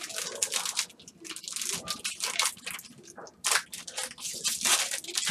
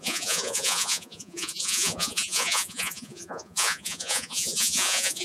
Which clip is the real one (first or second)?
first